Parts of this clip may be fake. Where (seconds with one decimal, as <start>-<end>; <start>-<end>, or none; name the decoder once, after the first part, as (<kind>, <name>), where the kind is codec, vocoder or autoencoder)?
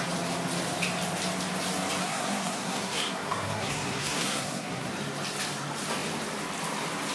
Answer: 2.0-4.9 (codec, SNAC)